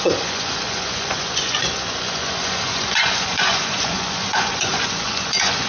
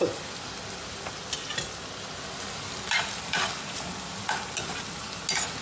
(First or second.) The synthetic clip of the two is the first